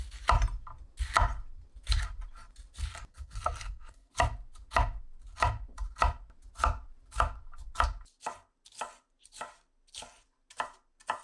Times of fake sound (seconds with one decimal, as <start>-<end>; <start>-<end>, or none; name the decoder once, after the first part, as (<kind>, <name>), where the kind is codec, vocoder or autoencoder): 3.1-4.1 (codec, SNAC)